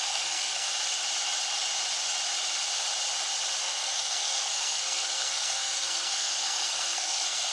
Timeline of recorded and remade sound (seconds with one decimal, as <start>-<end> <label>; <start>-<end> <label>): 0.0-0.7 remade; 0.7-3.6 recorded; 3.6-7.5 remade